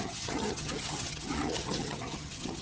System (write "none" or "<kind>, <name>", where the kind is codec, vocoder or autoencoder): vocoder, HiFi-GAN